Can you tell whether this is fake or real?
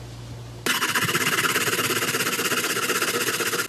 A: real